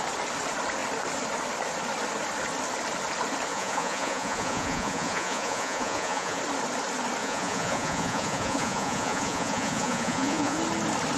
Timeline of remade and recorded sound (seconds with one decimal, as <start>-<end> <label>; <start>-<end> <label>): 0.0-3.5 recorded; 3.5-6.4 remade; 6.4-7.2 recorded; 7.2-10.6 remade; 10.6-11.2 recorded